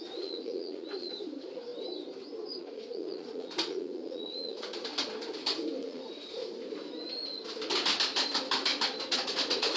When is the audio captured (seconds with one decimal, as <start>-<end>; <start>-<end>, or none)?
1.7-2.6; 4.9-5.8; 6.4-9.1